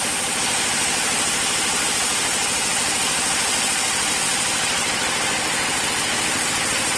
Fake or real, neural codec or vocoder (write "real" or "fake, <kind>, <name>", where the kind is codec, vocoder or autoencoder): real